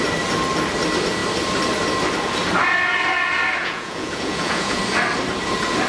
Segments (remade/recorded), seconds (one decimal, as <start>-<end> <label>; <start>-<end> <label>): 0.0-3.6 recorded; 3.6-4.8 remade; 4.8-5.9 recorded